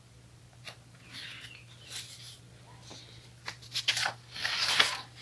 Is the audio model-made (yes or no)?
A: no